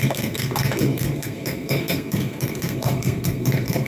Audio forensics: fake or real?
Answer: fake